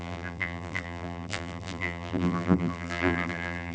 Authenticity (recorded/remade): remade